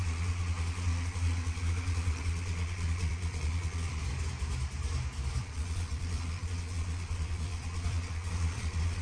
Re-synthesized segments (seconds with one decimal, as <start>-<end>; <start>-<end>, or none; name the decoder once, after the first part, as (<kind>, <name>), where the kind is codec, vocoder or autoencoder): 0.0-4.0 (vocoder, Vocos); 5.4-9.0